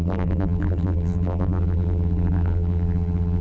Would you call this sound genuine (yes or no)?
no